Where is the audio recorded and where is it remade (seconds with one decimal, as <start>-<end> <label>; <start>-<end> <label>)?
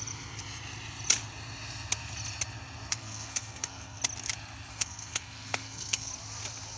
0.0-2.9 recorded; 2.9-4.0 remade; 4.0-4.7 recorded; 4.7-6.1 remade; 6.1-6.8 recorded